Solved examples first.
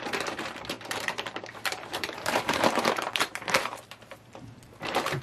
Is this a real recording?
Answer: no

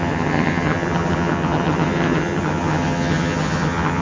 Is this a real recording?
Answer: no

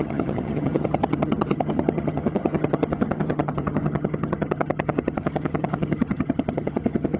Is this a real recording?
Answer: no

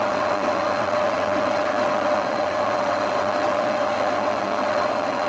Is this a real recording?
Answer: no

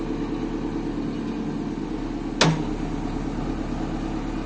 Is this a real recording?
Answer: yes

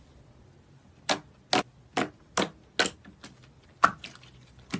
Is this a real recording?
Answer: yes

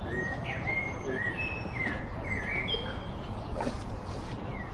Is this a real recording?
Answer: no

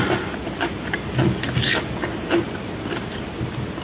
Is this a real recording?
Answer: yes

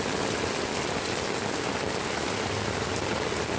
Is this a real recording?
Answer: yes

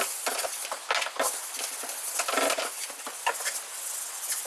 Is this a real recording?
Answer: yes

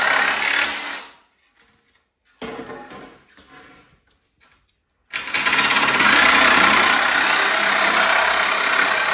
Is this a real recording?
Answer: yes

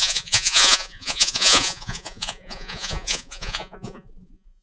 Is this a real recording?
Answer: no